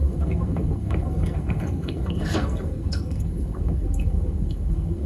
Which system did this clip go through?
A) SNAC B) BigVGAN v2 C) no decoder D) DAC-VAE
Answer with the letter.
A